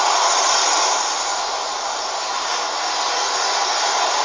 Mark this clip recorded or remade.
recorded